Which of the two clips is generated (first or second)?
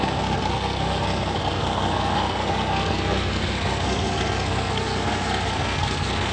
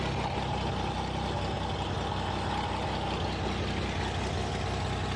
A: first